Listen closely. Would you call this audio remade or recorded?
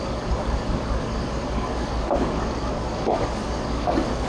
remade